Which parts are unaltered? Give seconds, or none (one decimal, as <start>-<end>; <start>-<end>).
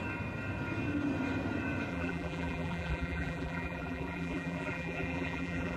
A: 0.0-1.9